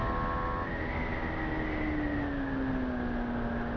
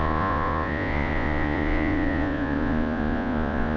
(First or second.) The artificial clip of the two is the second